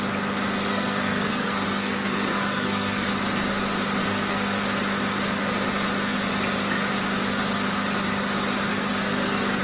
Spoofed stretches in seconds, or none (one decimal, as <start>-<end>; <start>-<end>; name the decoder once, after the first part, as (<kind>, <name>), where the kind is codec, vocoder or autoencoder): 0.7-3.1 (codec, SNAC); 4.0-4.6; 8.7-9.6